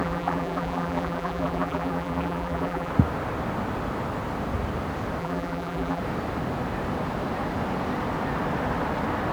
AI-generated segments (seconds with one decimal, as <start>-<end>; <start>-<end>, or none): 0.0-2.9; 5.2-6.0